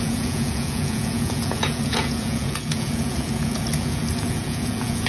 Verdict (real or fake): fake